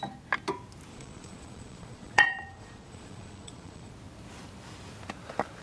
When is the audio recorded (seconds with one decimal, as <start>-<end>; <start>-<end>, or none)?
0.0-0.9; 3.9-5.6